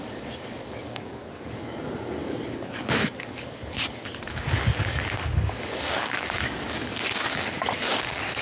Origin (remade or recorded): remade